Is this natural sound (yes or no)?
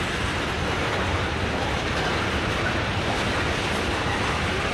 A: yes